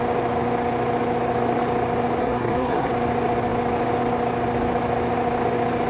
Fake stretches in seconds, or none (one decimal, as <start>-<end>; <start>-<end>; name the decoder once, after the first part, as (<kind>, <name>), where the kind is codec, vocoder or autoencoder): 2.2-2.9 (codec, SNAC)